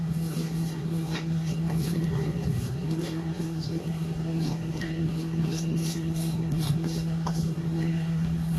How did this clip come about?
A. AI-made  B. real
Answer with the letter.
A